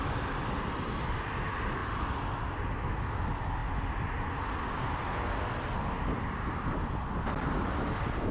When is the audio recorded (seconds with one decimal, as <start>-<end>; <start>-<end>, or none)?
0.0-8.3